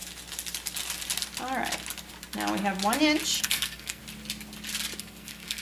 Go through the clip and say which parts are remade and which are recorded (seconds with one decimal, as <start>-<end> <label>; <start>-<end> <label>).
0.0-3.4 recorded; 3.4-4.0 remade; 4.0-5.0 recorded; 5.0-5.6 remade